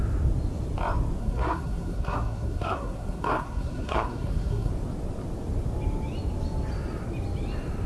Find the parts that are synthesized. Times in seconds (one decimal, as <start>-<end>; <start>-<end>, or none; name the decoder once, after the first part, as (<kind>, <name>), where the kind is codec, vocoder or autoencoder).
1.2-4.7 (codec, SNAC)

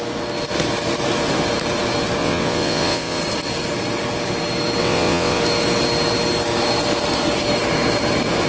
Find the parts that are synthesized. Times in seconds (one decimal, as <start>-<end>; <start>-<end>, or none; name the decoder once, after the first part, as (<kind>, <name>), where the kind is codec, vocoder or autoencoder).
2.2-3.2 (vocoder, WaveNeXt); 4.8-5.4

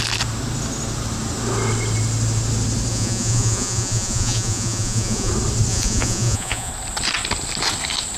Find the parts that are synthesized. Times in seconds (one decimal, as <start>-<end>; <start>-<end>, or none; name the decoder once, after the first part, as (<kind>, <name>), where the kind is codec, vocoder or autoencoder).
2.9-5.3 (vocoder, Vocos); 5.7-6.7